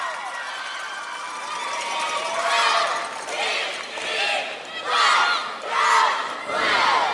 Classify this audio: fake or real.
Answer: real